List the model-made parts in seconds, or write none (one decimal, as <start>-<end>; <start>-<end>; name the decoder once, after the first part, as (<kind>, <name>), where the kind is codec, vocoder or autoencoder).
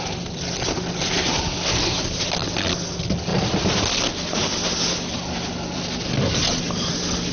none